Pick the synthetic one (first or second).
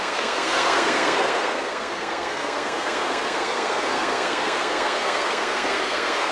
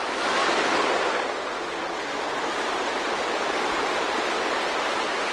first